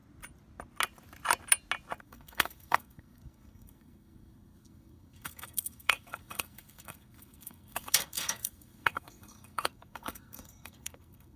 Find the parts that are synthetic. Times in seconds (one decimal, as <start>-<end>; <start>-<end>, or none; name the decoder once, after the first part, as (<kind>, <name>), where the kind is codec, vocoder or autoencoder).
2.0-11.4 (codec, SNAC)